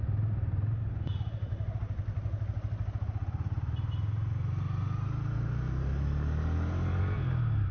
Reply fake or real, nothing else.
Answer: real